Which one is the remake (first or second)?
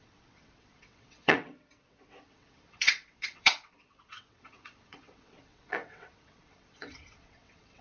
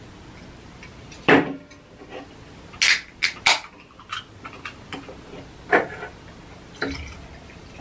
first